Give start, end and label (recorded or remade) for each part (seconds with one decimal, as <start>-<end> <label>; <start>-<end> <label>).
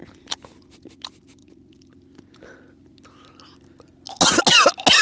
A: 0.0-5.0 recorded